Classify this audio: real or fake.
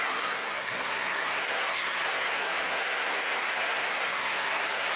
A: fake